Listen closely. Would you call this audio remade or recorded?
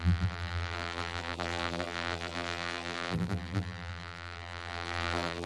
remade